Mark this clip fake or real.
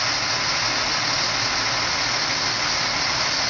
real